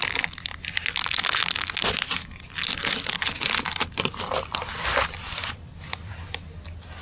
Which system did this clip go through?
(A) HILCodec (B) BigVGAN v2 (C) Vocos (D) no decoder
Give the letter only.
D